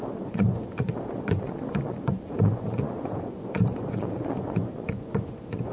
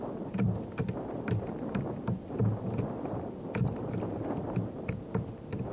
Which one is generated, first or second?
first